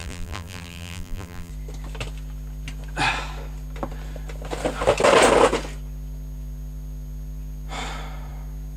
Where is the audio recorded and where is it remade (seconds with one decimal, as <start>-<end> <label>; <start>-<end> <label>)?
0.0-1.5 remade; 1.5-8.8 recorded